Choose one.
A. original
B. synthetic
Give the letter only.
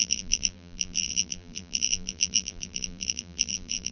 B